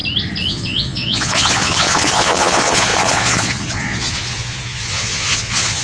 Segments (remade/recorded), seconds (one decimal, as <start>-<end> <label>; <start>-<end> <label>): 0.0-0.5 recorded; 0.5-5.8 remade